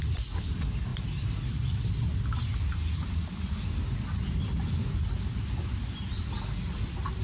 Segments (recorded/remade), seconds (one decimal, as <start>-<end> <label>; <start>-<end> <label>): 0.0-7.2 recorded